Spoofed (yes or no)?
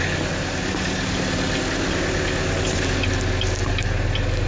no